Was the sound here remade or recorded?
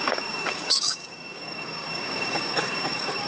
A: remade